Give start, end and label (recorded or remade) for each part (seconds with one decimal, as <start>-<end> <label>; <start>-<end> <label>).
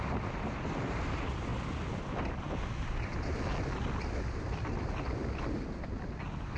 0.0-6.6 recorded